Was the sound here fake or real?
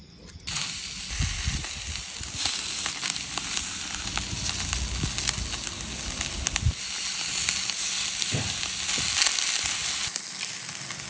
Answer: real